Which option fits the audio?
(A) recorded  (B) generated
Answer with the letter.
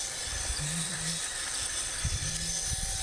B